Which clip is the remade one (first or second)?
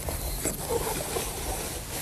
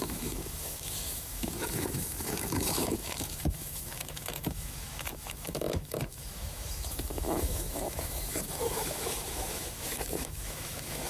second